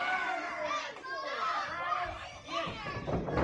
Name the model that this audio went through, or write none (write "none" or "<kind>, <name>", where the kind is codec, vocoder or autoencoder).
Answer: none